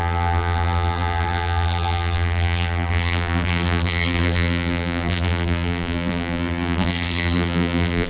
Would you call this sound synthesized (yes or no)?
yes